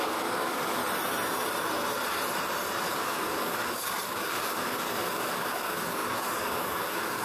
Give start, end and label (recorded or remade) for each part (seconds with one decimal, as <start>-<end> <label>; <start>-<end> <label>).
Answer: 0.0-0.8 remade; 0.8-2.9 recorded; 2.9-7.2 remade